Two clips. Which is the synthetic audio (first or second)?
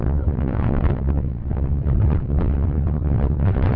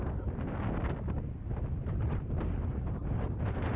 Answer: first